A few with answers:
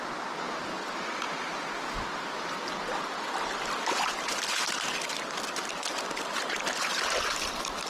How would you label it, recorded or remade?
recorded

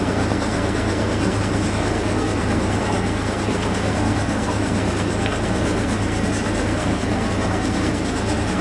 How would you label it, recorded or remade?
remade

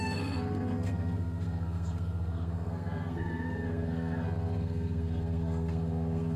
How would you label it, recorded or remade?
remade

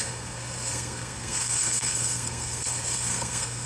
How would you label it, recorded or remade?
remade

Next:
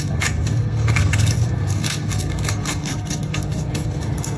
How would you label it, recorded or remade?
remade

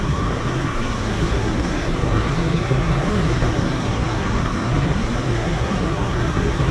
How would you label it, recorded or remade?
remade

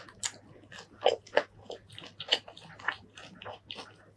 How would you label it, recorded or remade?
recorded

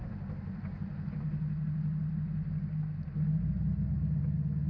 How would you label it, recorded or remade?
recorded